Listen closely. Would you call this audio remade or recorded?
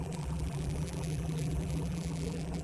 remade